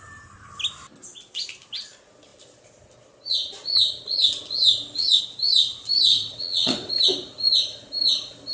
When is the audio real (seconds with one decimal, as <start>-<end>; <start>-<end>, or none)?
0.0-6.1; 6.9-8.5